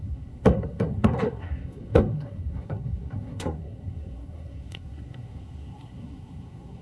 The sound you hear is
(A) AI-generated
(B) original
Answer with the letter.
A